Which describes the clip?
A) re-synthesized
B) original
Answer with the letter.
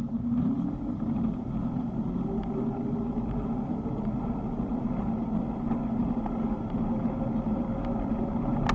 B